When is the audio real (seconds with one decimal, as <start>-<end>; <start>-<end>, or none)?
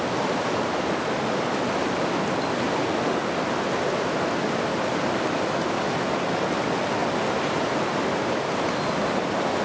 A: 0.0-9.6